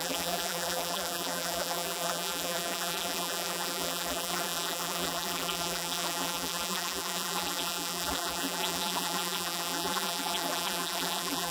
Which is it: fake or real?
fake